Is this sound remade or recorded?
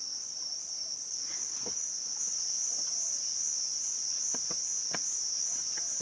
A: recorded